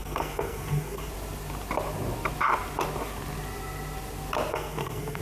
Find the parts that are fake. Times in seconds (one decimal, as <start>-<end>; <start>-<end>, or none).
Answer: 0.0-1.1; 4.5-5.2